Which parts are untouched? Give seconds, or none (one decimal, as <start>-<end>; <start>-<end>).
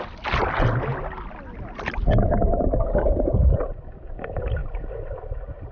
0.0-5.7